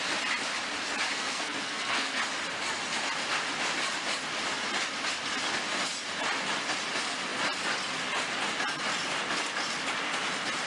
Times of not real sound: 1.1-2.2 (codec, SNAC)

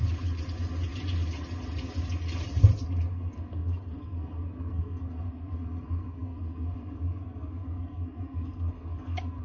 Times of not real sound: 3.1-9.4 (codec, SNAC)